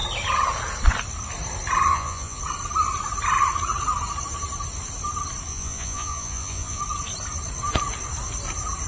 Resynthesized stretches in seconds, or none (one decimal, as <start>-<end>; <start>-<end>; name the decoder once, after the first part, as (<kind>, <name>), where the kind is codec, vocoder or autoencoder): 1.9-2.4 (vocoder, Vocos); 5.5-6.8